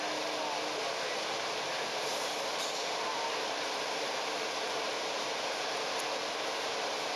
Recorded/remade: recorded